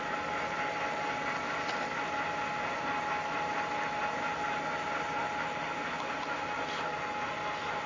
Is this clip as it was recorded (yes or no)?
yes